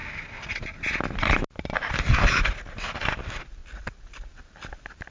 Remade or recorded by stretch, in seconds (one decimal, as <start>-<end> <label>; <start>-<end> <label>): 0.0-3.6 recorded; 3.6-4.3 remade; 4.3-5.1 recorded